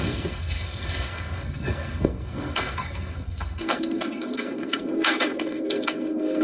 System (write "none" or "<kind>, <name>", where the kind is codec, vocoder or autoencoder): codec, SNAC